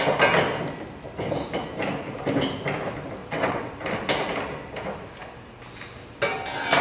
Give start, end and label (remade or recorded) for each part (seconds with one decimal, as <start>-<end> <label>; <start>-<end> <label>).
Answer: 0.0-3.2 recorded; 3.2-3.7 remade; 3.7-6.8 recorded